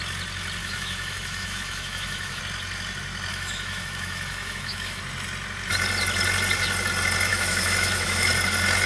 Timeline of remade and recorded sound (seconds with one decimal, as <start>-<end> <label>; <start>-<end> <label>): 0.0-0.6 recorded; 0.6-2.4 remade; 2.4-3.3 recorded; 3.3-5.0 remade; 5.0-7.3 recorded; 7.3-8.3 remade; 8.3-8.9 recorded